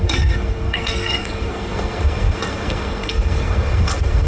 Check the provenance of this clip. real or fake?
fake